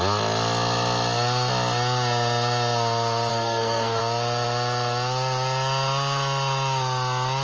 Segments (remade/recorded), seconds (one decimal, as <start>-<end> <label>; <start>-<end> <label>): 0.0-3.3 recorded; 3.3-4.0 remade; 4.0-7.4 recorded